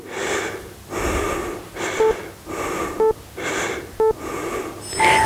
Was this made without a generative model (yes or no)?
yes